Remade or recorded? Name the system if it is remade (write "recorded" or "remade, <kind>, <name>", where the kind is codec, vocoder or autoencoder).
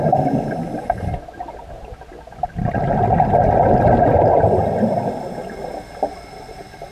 recorded